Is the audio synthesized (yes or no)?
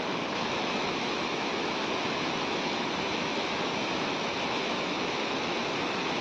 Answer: yes